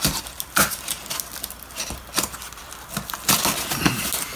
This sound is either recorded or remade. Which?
recorded